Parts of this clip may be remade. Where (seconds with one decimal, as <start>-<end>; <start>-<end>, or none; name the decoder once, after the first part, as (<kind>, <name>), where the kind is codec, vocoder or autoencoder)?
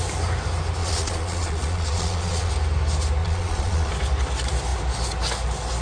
0.8-2.5 (vocoder, Vocos); 3.2-3.9